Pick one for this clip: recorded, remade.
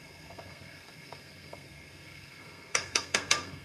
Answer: remade